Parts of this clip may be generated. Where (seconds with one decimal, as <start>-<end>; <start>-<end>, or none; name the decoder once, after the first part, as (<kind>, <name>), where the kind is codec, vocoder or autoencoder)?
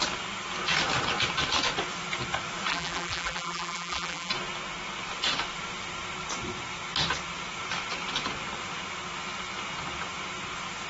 2.7-4.3 (vocoder, BigVGAN v2)